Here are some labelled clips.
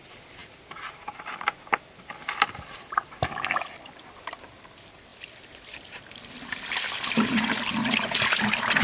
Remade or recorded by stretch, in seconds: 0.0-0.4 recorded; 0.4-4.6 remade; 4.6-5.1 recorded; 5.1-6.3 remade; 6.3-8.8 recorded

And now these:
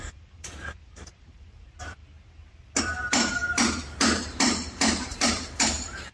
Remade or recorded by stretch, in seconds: 0.0-2.0 remade; 2.0-2.8 recorded; 2.8-3.4 remade; 3.4-4.4 recorded; 4.4-6.1 remade

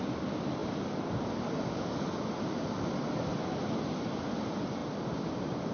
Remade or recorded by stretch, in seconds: 0.0-4.8 remade; 4.8-5.7 recorded

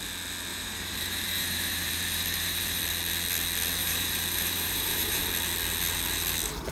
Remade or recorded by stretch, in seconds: 0.0-0.5 recorded; 0.5-2.8 remade; 2.8-3.8 recorded; 3.8-5.2 remade; 5.2-6.7 recorded

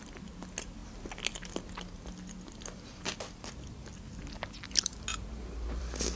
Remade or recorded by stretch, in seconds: 0.0-5.1 recorded; 5.1-5.8 remade; 5.8-6.2 recorded

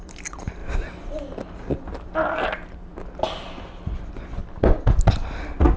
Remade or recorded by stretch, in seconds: 0.0-0.6 remade; 0.6-2.2 recorded; 2.2-2.9 remade; 2.9-3.5 recorded; 3.5-4.4 remade; 4.4-5.1 recorded; 5.1-5.8 remade

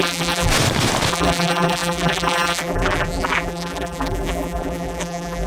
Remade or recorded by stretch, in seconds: 0.0-0.5 remade; 0.5-1.1 recorded; 1.1-5.5 remade